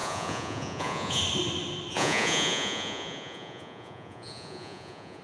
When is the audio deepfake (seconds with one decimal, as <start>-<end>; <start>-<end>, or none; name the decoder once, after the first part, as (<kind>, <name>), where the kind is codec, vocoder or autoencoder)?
0.0-1.2 (vocoder, Vocos); 1.9-5.2